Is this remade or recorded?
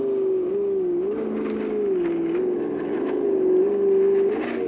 recorded